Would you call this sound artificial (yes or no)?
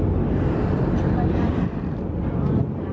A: yes